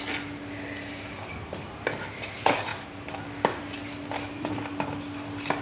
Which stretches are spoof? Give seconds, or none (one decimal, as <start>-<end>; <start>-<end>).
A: none